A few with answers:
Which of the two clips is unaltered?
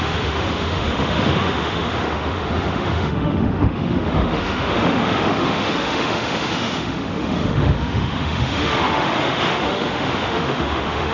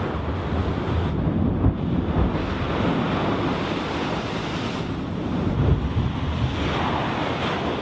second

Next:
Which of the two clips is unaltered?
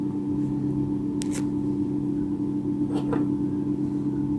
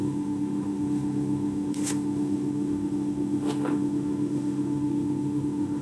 first